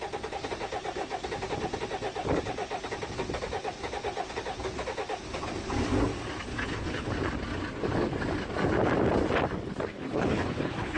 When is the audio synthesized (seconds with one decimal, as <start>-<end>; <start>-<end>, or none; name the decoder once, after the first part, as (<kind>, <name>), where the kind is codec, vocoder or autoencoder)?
6.5-7.1 (codec, HILCodec); 9.9-11.0